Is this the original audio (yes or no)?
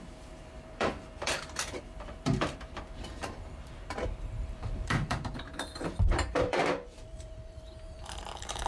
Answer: no